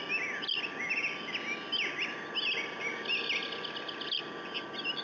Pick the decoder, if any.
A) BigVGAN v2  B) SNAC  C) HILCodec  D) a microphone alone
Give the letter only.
D